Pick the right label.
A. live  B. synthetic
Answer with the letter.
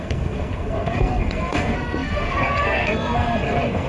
B